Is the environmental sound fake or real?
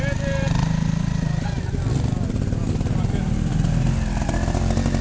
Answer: real